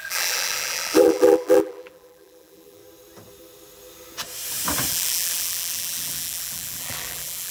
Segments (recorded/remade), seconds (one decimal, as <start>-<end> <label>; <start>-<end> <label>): 0.0-2.8 remade; 2.8-4.9 recorded; 4.9-7.5 remade